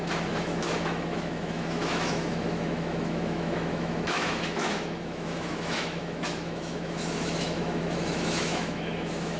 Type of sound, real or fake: fake